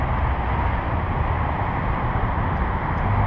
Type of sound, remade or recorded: remade